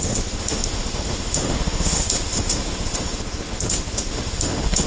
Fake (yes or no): yes